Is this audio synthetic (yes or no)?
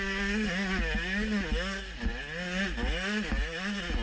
no